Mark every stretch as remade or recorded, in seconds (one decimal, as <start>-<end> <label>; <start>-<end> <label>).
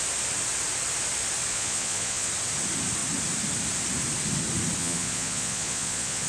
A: 0.0-1.5 recorded; 1.5-2.3 remade; 2.3-4.8 recorded; 4.8-6.3 remade